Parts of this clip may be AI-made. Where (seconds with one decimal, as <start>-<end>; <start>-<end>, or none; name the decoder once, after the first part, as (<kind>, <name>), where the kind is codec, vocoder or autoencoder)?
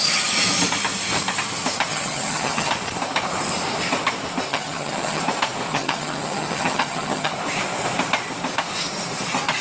1.9-2.7 (vocoder, HiFi-GAN); 4.5-5.2; 5.7-7.3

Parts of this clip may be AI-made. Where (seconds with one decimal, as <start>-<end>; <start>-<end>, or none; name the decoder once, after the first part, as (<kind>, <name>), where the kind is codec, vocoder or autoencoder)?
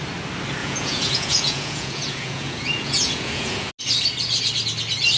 0.6-3.7 (vocoder, Vocos)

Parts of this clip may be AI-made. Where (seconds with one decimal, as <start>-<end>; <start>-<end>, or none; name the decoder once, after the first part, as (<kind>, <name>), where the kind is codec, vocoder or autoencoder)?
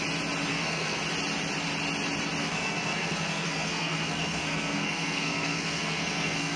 0.5-1.0 (codec, SNAC); 2.4-6.6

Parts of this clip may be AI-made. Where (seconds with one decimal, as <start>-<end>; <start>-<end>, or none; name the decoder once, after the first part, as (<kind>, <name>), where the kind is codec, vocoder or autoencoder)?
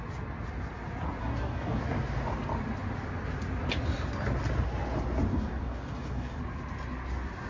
1.2-1.8 (codec, DAC); 5.3-6.4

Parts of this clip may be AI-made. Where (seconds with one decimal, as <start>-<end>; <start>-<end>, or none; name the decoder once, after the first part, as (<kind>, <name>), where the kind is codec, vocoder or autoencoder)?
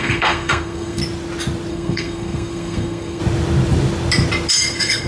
0.0-1.0 (codec, SNAC); 1.7-3.2; 4.5-5.1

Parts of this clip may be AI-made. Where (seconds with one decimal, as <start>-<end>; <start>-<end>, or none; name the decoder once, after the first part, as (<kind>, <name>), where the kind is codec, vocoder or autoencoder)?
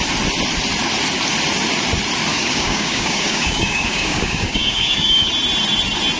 2.3-5.3 (codec, DAC)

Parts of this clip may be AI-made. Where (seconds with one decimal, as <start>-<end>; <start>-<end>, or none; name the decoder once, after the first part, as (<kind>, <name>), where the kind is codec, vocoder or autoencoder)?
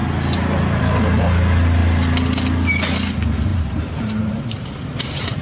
3.5-5.4 (vocoder, BigVGAN v2)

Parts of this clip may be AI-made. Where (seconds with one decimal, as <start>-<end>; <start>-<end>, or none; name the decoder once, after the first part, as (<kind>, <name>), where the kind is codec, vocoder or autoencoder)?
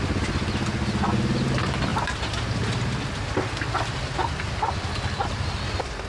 none